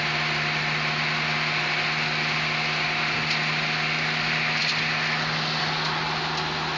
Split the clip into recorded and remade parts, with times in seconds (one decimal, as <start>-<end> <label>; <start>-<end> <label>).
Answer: 0.0-6.8 recorded